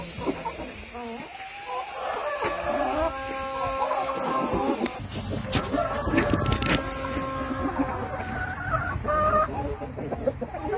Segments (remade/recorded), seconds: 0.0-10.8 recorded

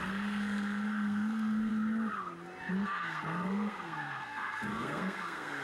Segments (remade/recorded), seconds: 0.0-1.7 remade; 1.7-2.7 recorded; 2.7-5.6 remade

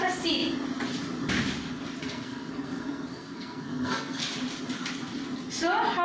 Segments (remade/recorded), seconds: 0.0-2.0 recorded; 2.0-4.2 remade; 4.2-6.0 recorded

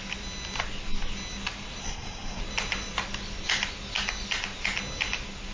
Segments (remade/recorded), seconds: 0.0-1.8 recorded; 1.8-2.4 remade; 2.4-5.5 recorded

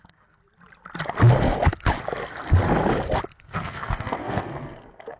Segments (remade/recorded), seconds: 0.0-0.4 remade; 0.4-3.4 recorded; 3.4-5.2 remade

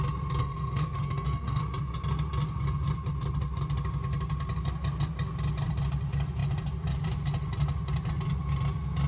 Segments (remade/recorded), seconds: 0.0-0.4 recorded; 0.4-1.6 remade; 1.6-9.1 recorded